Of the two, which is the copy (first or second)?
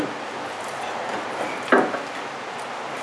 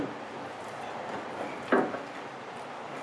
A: second